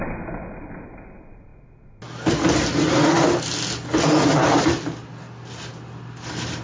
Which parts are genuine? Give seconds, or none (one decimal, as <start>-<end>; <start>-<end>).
0.0-6.6